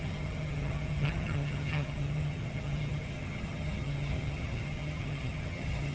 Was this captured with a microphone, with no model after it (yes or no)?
no